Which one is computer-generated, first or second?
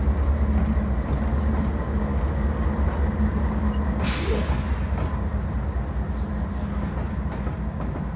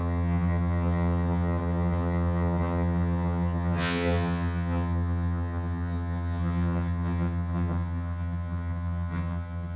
second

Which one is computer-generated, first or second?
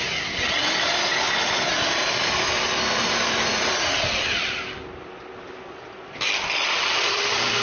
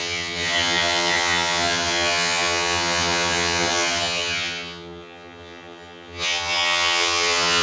second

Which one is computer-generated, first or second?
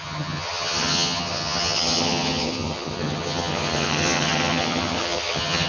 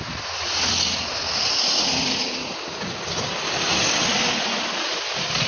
first